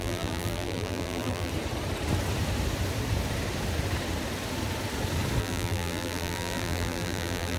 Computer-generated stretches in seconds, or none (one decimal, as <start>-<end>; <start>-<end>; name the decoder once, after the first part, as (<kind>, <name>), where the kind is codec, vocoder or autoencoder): 0.0-1.5 (vocoder, BigVGAN v2); 5.4-7.6